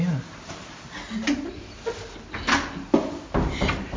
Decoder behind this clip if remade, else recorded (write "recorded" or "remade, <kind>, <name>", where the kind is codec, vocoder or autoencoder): recorded